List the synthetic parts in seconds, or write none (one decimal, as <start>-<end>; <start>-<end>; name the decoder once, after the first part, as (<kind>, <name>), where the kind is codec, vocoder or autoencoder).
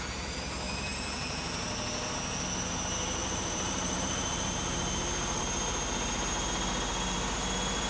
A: 3.2-5.4 (vocoder, BigVGAN v2)